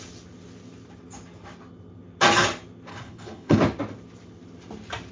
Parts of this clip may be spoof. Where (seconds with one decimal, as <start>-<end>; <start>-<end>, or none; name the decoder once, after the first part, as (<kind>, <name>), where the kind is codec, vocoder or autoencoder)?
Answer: 2.9-3.6 (codec, HILCodec)